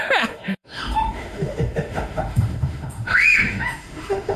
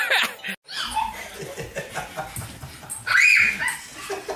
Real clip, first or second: second